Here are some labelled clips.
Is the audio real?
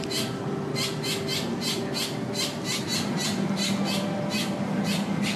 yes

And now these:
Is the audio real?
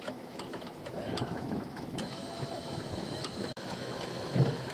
no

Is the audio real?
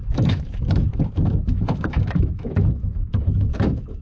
no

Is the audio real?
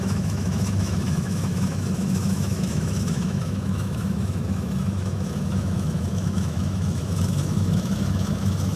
no